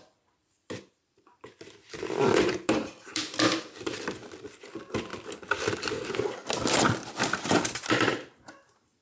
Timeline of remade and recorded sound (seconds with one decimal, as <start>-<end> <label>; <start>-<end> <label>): 0.0-9.0 remade